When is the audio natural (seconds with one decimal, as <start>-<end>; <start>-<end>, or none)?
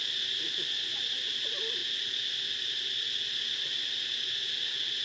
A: 0.0-1.8; 3.1-5.0